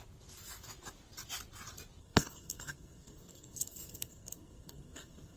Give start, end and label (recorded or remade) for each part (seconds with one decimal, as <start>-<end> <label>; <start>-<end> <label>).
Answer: 0.0-2.0 recorded; 2.0-5.4 remade